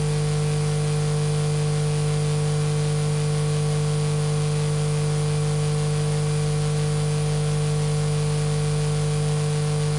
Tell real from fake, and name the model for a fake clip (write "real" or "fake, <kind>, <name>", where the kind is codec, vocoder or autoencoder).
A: real